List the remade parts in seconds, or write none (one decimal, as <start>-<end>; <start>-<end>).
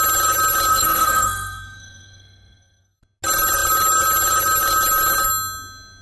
0.7-3.0